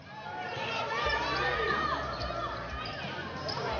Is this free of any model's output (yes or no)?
yes